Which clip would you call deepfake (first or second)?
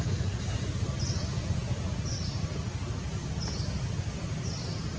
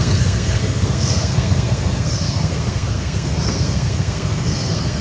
second